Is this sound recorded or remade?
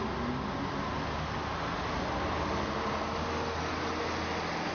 recorded